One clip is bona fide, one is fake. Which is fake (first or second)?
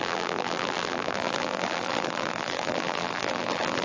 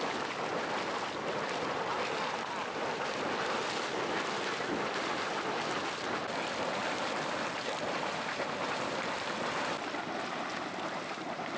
first